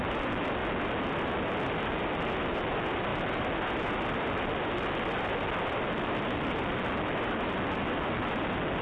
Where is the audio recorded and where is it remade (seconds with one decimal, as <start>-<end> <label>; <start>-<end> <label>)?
0.0-8.8 recorded